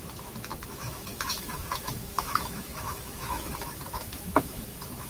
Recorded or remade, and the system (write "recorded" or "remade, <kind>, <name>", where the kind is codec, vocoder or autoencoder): remade, autoencoder, DAC-VAE